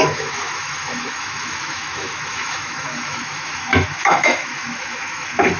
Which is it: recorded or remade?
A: remade